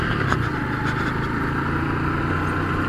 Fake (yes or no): no